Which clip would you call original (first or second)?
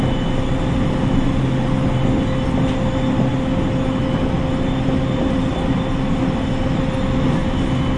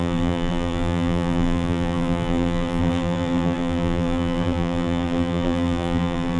first